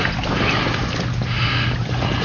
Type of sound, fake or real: real